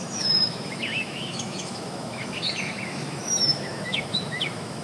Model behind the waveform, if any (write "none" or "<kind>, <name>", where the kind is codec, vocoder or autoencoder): autoencoder, DAC-VAE